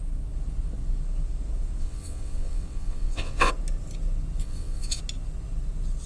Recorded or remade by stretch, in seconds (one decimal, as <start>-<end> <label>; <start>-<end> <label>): 0.0-1.8 recorded; 1.8-3.5 remade; 3.5-4.4 recorded; 4.4-5.0 remade; 5.0-6.1 recorded